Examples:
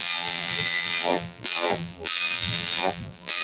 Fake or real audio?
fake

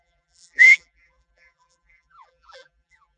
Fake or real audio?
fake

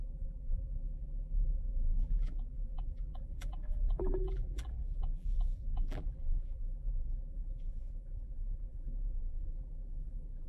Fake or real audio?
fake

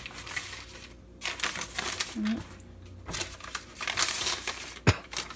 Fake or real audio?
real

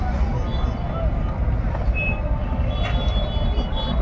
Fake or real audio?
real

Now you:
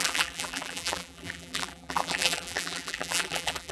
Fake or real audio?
fake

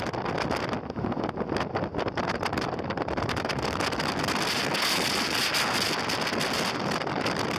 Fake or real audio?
real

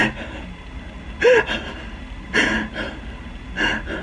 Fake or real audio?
real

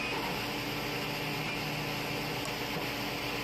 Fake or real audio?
real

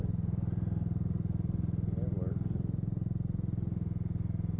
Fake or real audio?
real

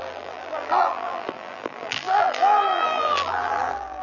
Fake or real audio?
fake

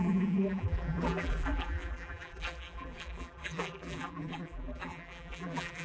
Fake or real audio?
fake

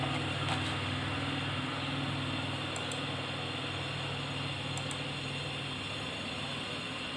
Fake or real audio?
real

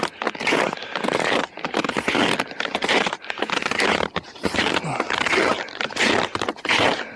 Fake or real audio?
real